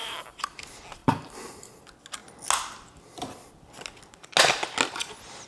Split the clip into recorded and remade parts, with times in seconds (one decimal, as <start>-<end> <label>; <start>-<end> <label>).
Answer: 0.0-0.6 remade; 0.6-1.0 recorded; 1.0-1.8 remade; 1.8-5.5 recorded

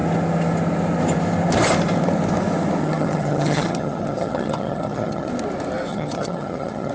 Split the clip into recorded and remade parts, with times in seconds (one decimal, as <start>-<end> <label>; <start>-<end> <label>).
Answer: 0.0-2.8 recorded; 2.8-5.3 remade; 5.3-5.9 recorded; 5.9-6.9 remade

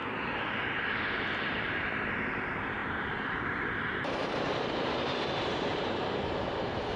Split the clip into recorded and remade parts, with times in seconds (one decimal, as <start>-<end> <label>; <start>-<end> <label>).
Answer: 0.0-1.2 recorded; 1.2-7.0 remade

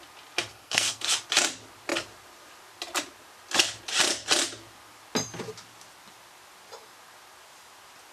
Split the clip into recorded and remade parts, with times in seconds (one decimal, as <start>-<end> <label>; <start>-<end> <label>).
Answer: 0.0-0.5 recorded; 0.5-1.1 remade; 1.1-8.1 recorded

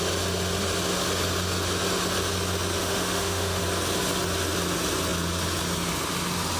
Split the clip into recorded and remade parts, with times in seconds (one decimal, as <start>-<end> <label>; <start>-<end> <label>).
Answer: 0.0-2.8 recorded; 2.8-3.6 remade; 3.6-6.6 recorded

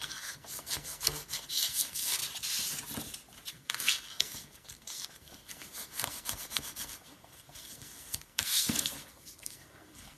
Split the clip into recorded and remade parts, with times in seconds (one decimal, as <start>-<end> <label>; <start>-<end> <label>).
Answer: 0.0-2.2 remade; 2.2-3.5 recorded; 3.5-10.2 remade

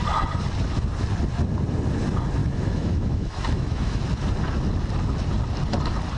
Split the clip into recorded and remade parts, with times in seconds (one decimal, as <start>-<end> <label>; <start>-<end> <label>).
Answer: 0.0-2.4 recorded; 2.4-4.0 remade; 4.0-6.2 recorded

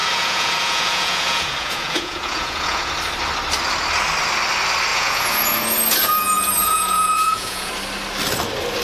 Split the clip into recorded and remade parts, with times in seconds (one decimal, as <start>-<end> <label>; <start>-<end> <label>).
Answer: 0.0-2.9 remade; 2.9-4.9 recorded; 4.9-7.7 remade; 7.7-8.8 recorded